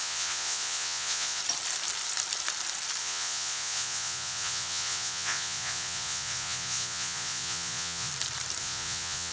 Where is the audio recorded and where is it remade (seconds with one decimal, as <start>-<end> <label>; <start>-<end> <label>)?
0.0-1.4 remade; 1.4-3.0 recorded; 3.0-8.1 remade; 8.1-8.6 recorded; 8.6-9.3 remade